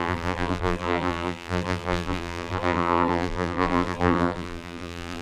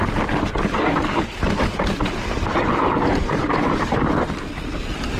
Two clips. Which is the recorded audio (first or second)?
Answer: second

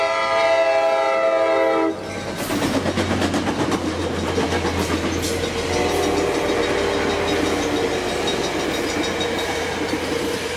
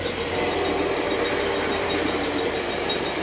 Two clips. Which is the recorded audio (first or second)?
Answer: first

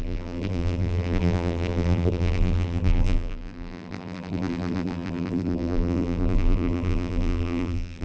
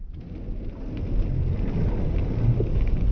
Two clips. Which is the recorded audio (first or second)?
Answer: second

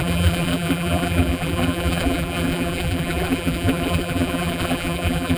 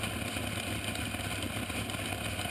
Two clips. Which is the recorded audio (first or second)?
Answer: second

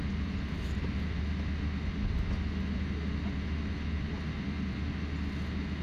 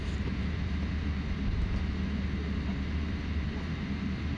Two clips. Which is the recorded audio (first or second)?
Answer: first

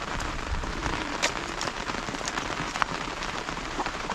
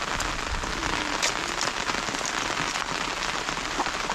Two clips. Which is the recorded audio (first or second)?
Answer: second